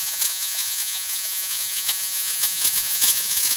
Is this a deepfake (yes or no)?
yes